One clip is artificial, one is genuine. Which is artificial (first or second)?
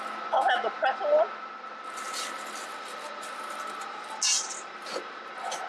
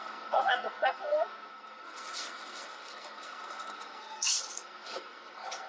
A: second